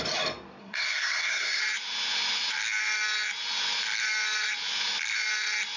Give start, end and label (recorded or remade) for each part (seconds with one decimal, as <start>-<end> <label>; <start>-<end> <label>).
0.0-0.6 recorded; 0.6-1.6 remade; 1.6-5.8 recorded